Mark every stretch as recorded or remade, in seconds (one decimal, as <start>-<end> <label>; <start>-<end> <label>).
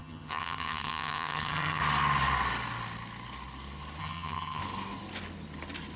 0.0-1.8 remade; 1.8-4.0 recorded; 4.0-4.6 remade; 4.6-6.0 recorded